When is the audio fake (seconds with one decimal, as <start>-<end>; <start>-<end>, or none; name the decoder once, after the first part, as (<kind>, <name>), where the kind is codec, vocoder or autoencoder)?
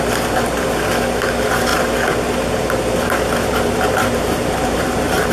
1.7-5.3 (vocoder, BigVGAN v2)